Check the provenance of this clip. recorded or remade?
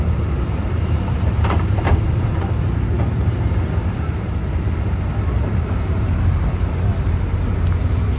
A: remade